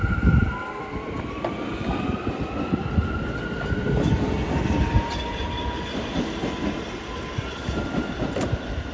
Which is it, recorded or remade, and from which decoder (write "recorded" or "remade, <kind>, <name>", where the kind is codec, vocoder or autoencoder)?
recorded